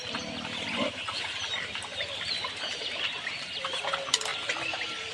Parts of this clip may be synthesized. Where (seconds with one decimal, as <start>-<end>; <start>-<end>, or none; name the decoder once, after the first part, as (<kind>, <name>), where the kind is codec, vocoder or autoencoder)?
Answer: 1.9-3.0 (vocoder, BigVGAN v2)